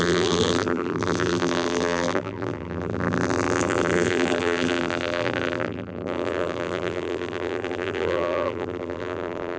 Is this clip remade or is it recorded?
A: remade